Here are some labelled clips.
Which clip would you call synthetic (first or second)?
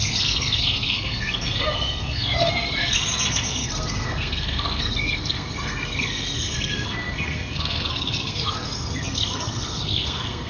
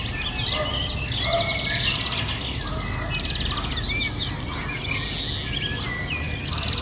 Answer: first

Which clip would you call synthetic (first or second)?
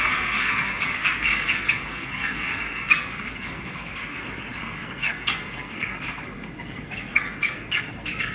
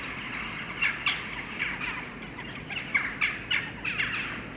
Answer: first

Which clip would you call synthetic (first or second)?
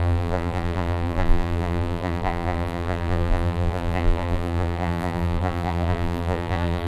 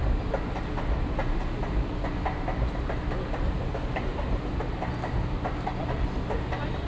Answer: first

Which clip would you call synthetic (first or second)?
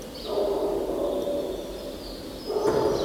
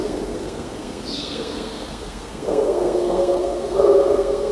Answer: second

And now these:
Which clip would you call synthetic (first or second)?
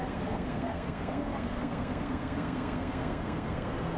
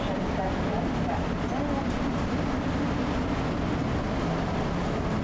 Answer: first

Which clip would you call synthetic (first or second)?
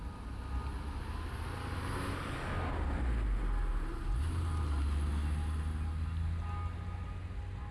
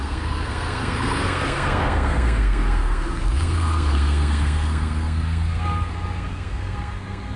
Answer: second